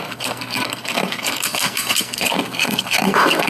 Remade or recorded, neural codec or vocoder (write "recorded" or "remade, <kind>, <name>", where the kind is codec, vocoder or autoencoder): remade, codec, SNAC